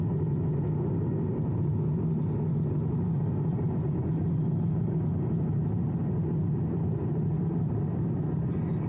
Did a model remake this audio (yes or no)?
no